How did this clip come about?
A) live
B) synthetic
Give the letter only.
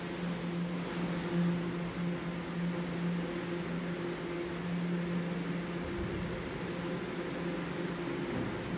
A